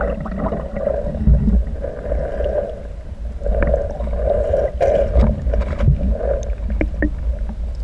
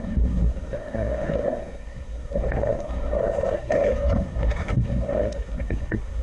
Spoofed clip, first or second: second